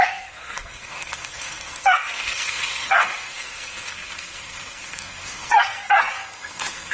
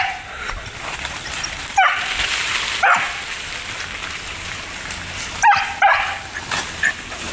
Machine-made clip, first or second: first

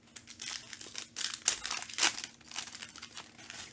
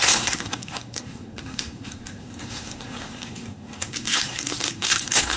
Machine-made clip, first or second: second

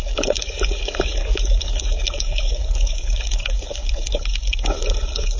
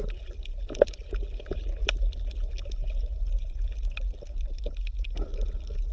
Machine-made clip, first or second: first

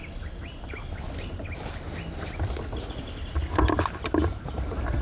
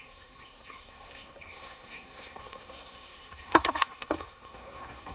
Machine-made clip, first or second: second